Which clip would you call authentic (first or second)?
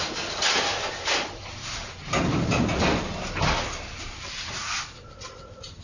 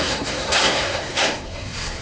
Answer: first